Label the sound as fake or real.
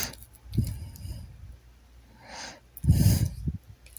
real